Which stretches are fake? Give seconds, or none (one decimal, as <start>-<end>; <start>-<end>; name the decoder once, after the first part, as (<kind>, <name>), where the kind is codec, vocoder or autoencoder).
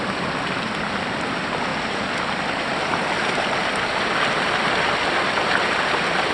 none